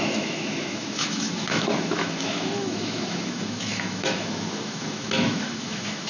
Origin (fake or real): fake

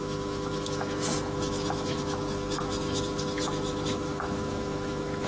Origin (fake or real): fake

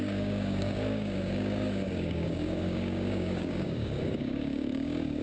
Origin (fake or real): fake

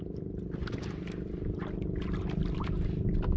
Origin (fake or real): real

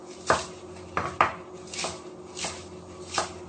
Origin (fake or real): real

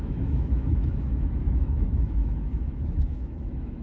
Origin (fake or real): fake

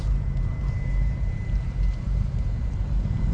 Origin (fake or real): fake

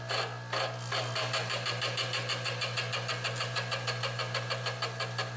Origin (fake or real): real